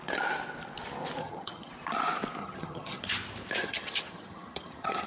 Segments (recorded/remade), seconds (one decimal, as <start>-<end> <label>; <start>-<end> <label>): 0.0-1.2 recorded; 1.2-1.7 remade; 1.7-2.4 recorded; 2.4-3.0 remade; 3.0-3.6 recorded; 3.6-5.1 remade